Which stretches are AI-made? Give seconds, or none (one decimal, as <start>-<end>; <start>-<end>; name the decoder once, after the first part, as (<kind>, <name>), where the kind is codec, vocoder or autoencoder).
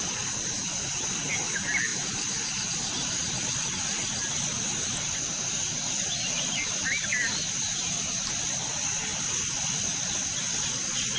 none